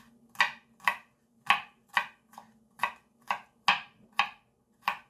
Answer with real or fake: real